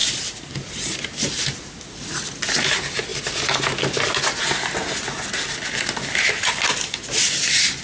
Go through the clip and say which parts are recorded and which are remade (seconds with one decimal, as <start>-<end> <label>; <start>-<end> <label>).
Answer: 0.0-7.8 recorded

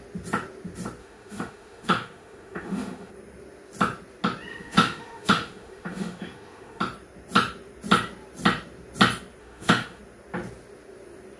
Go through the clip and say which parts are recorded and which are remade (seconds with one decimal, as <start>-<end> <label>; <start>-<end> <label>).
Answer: 0.0-1.0 recorded; 1.0-3.1 remade; 3.1-4.5 recorded; 4.5-6.8 remade; 6.8-9.4 recorded; 9.4-10.0 remade; 10.0-11.4 recorded